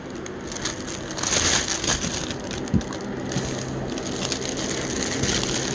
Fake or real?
real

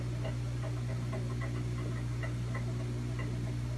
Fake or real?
real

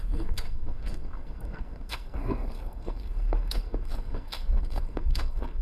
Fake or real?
fake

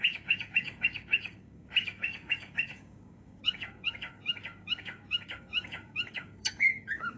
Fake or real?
fake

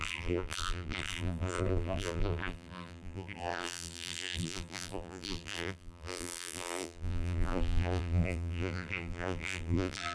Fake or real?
fake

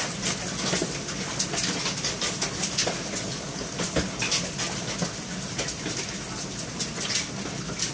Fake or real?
real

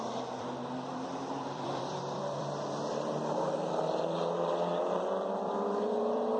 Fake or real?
fake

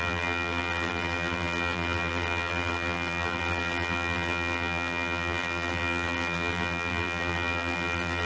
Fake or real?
fake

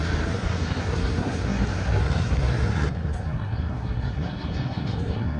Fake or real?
fake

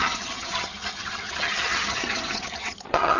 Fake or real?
fake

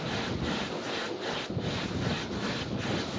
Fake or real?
real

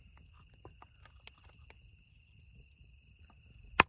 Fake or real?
real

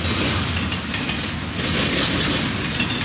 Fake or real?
real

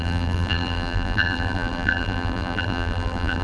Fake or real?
fake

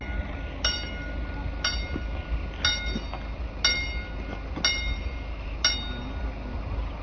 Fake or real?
real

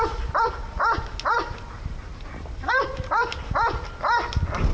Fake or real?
real